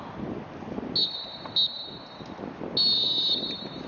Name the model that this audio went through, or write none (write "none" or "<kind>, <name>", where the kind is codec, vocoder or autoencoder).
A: none